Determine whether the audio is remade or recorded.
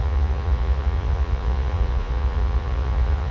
remade